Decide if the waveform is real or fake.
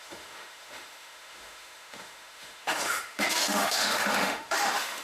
fake